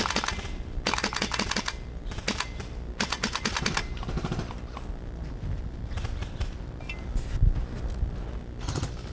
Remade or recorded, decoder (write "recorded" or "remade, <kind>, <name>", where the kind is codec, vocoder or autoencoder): recorded